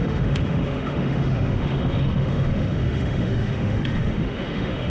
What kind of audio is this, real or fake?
fake